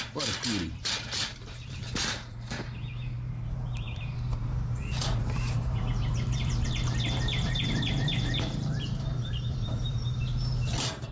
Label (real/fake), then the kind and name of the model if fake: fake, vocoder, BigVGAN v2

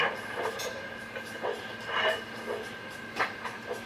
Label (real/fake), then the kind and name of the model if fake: fake, vocoder, BigVGAN v2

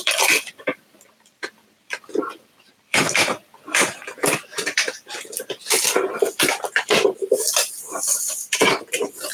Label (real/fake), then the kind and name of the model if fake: fake, vocoder, BigVGAN v2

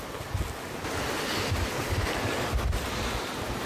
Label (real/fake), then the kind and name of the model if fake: real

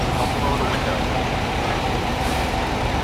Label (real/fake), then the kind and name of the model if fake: fake, vocoder, BigVGAN v2